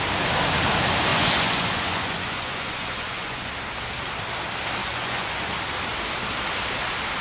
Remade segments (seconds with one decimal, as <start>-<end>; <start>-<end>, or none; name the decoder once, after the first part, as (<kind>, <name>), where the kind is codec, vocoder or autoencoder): 1.1-3.5 (vocoder, Vocos); 4.8-5.5